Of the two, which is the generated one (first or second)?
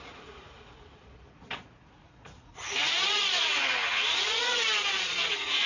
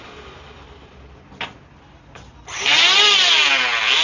first